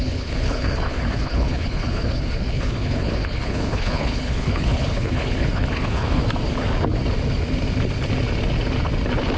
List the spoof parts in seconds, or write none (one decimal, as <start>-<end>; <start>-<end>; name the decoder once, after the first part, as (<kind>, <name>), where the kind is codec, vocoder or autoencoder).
0.0-6.2 (codec, HILCodec)